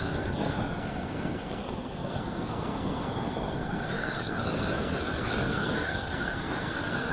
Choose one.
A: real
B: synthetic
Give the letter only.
B